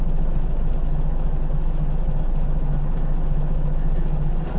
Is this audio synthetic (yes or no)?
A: no